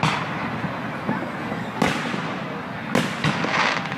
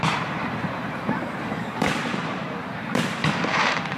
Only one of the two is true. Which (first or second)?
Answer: first